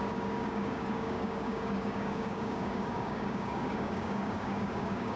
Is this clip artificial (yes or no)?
yes